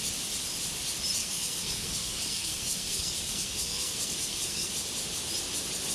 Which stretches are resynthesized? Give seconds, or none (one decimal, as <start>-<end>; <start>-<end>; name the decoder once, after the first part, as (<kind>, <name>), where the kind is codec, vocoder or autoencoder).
1.2-4.7 (codec, SNAC)